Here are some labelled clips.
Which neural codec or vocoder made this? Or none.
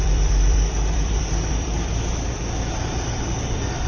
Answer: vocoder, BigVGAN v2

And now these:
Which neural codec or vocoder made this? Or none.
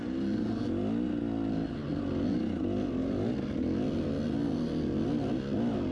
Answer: none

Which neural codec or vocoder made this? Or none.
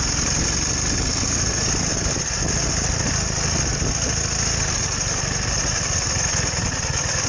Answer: none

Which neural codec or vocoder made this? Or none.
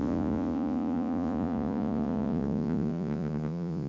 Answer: vocoder, Vocos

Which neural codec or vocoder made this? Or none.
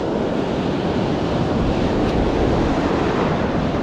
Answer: none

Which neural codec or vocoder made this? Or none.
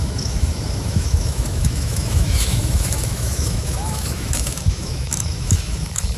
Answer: autoencoder, DAC-VAE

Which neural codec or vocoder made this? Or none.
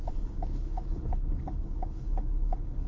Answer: codec, HILCodec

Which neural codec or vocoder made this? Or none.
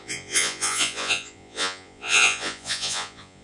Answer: vocoder, Vocos